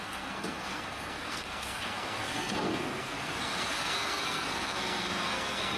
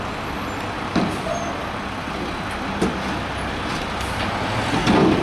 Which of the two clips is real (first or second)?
second